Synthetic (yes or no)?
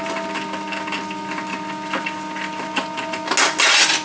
no